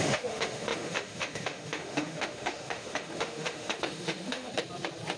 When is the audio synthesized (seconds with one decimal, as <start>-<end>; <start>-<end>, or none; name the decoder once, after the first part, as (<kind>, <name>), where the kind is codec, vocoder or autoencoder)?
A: 0.0-4.5 (autoencoder, DAC-VAE)